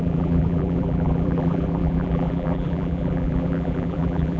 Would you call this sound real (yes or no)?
no